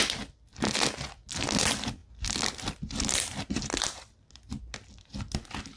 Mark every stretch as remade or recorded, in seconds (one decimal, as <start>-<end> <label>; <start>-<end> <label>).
0.0-5.8 recorded